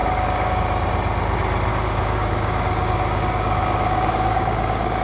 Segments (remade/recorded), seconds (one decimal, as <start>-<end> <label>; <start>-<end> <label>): 0.0-0.6 remade; 0.6-1.7 recorded; 1.7-5.0 remade